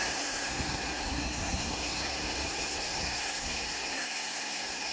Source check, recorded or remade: remade